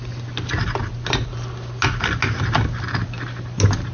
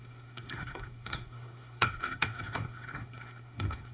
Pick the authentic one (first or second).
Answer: first